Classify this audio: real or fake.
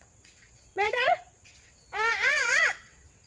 fake